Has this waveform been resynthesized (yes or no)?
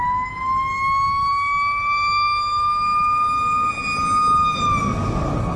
no